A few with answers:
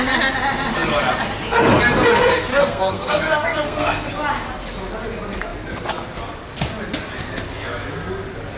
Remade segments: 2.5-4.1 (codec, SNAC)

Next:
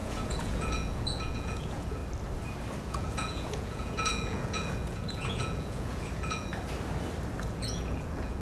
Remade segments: 0.0-2.0 (vocoder, Vocos); 2.8-6.5; 7.4-8.4

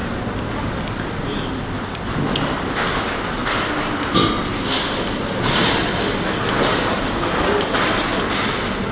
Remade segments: none

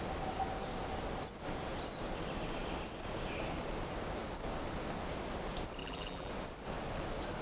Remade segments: 5.8-6.3 (vocoder, BigVGAN v2)

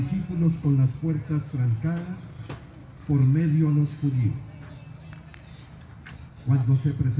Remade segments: none

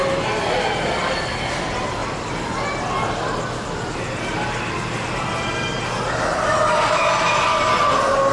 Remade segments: none

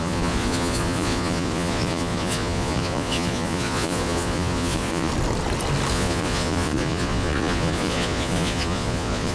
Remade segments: 0.0-5.1 (vocoder, Vocos); 5.9-9.3